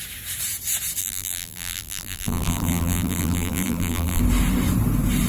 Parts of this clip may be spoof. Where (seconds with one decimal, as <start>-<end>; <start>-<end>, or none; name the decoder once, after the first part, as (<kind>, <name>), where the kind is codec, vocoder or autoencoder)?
1.0-4.2 (vocoder, BigVGAN v2)